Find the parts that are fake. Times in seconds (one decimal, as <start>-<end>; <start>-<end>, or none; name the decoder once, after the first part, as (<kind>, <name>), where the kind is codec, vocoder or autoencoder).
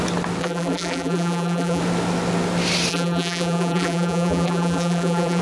0.4-1.8 (vocoder, BigVGAN v2); 2.9-5.4